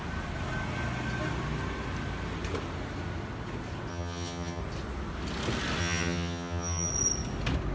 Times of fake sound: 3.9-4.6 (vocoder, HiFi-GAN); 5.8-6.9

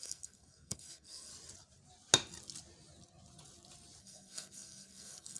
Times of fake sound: 0.0-1.3 (codec, SNAC); 4.0-5.4

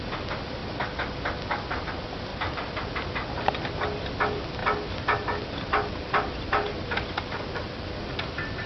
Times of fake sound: none

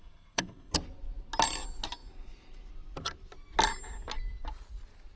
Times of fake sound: 0.0-0.7 (codec, SNAC)

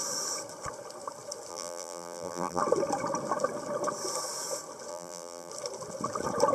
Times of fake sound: 1.5-2.6 (vocoder, BigVGAN v2); 4.9-5.5

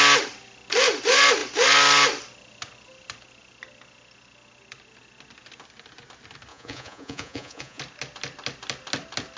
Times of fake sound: 6.5-7.8 (vocoder, Vocos)

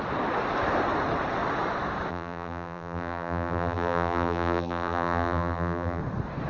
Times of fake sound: 2.1-6.0 (vocoder, BigVGAN v2)